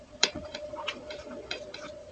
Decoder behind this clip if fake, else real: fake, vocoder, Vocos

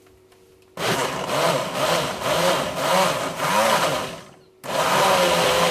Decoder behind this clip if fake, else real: real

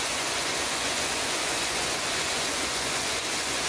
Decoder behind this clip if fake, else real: fake, vocoder, Vocos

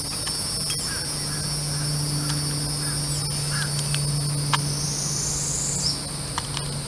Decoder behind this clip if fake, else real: real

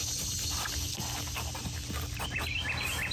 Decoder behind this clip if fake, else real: real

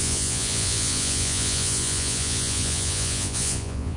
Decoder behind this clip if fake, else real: fake, vocoder, Vocos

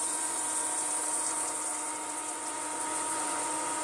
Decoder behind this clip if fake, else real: fake, vocoder, Vocos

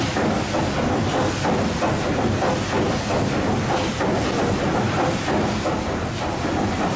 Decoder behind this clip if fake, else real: real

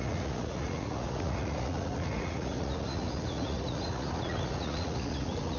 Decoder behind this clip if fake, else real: fake, vocoder, Vocos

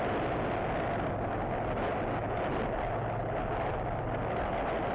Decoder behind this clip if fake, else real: real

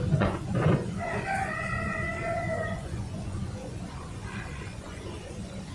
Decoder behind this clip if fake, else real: fake, vocoder, Vocos